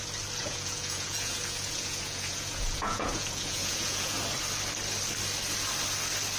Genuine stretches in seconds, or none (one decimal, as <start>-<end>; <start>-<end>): 0.0-0.4; 4.2-6.4